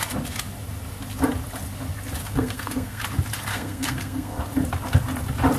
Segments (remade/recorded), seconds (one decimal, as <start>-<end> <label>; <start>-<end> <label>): 0.0-2.2 recorded; 2.2-3.0 remade; 3.0-3.5 recorded; 3.5-4.4 remade; 4.4-5.6 recorded